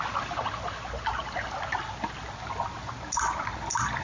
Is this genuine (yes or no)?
yes